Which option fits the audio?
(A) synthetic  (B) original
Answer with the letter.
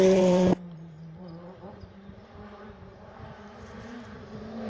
A